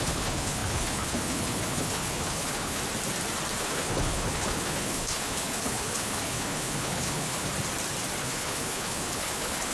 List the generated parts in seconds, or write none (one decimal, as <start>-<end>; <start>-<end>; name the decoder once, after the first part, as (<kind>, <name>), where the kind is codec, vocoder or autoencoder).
0.0-2.8 (codec, HILCodec); 3.6-7.5; 8.2-9.7